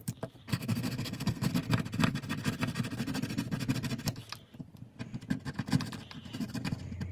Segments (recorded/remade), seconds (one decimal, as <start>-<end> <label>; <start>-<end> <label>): 0.0-0.5 recorded; 0.5-1.5 remade; 1.5-7.1 recorded